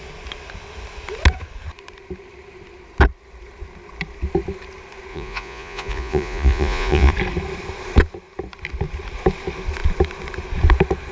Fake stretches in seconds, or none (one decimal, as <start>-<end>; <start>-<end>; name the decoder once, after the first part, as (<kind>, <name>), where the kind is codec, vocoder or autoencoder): 5.1-7.1 (vocoder, Vocos)